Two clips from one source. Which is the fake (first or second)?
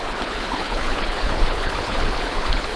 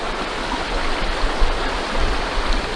first